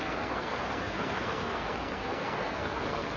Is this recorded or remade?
remade